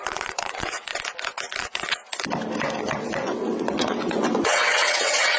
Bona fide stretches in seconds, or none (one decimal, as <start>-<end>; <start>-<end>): 0.9-1.6; 2.0-2.8